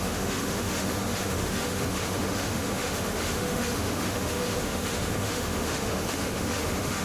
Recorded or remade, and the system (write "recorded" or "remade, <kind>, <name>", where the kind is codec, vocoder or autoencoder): remade, autoencoder, DAC-VAE